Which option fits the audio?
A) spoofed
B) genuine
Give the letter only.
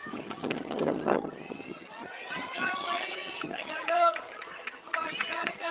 A